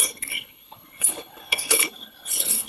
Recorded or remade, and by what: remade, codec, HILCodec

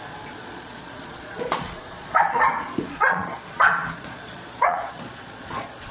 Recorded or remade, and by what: remade, vocoder, Vocos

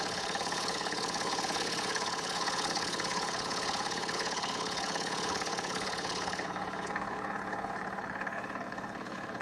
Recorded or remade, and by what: remade, codec, HILCodec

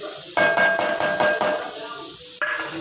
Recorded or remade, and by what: recorded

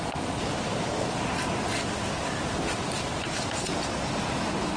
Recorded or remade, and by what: recorded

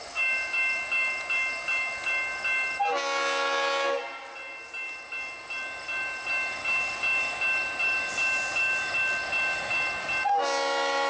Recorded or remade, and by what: recorded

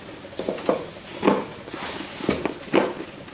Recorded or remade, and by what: recorded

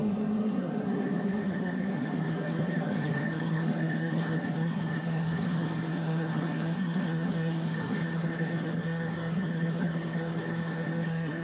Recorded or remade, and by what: remade, codec, SNAC